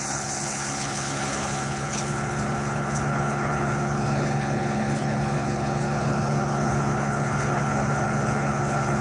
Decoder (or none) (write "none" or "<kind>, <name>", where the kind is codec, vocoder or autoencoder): codec, HILCodec